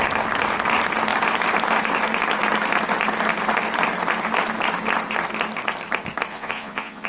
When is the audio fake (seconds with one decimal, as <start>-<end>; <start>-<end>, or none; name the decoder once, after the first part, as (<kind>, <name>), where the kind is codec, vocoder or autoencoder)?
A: 6.3-7.1 (vocoder, Vocos)